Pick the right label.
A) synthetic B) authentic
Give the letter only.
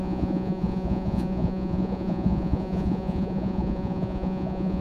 A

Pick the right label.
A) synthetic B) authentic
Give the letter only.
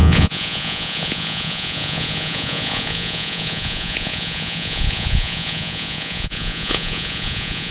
A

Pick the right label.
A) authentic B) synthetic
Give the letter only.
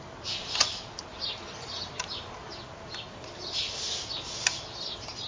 A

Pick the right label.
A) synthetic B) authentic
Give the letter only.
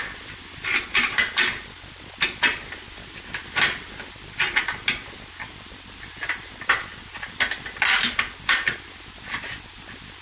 B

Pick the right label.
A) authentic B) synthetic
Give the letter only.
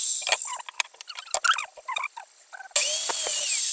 A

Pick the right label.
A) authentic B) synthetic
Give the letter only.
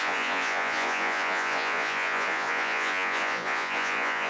B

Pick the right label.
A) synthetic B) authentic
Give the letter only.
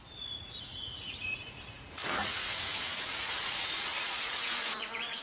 A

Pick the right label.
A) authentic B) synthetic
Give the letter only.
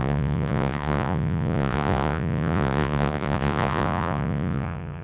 B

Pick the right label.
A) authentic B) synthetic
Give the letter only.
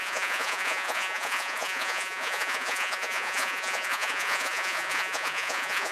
B